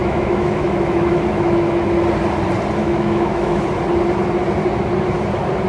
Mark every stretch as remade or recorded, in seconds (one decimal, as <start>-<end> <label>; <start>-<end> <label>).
0.0-1.8 remade; 1.8-2.8 recorded; 2.8-3.7 remade; 3.7-5.7 recorded